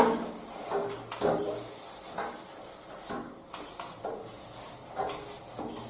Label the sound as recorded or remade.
recorded